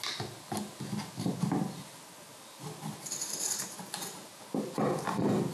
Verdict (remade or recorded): recorded